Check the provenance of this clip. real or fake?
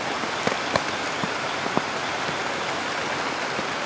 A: real